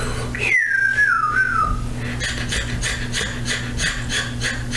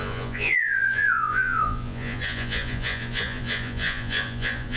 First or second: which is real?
first